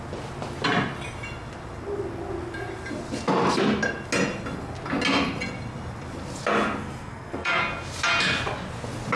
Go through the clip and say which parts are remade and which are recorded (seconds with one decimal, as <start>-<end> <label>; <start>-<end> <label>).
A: 0.0-6.8 recorded; 6.8-7.6 remade; 7.6-9.2 recorded